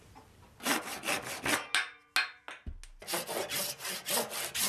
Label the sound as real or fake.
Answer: real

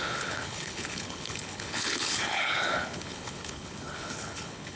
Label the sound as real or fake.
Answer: fake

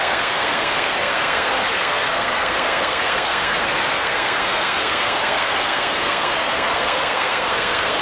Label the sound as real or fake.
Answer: fake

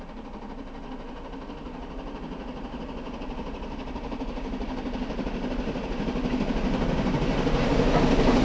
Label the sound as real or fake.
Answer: real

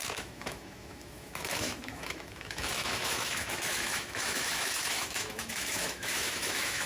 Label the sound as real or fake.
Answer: fake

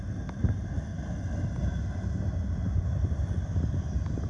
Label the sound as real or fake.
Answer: real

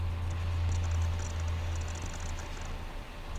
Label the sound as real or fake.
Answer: real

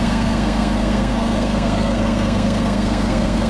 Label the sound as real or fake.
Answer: fake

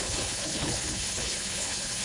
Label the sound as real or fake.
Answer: fake